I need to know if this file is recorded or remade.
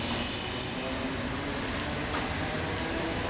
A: recorded